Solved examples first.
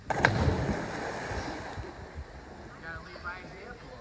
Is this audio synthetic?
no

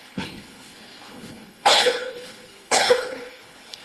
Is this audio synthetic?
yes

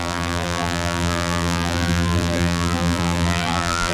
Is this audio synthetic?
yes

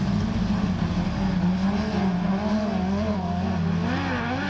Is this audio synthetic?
no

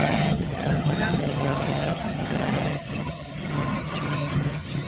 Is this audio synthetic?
yes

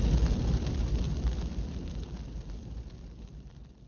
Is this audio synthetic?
no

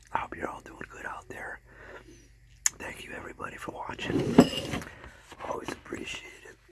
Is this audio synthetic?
no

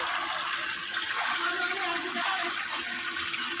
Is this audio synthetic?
no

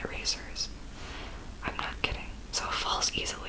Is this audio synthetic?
no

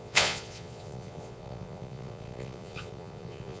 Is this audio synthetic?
yes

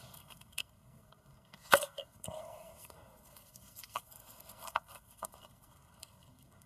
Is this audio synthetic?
yes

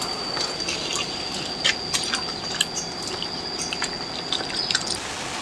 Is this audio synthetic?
no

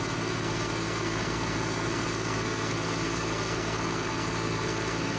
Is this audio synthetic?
yes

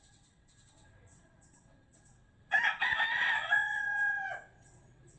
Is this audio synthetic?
yes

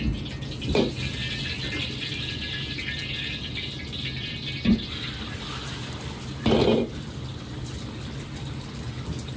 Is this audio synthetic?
no